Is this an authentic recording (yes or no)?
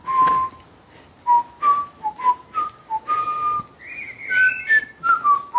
yes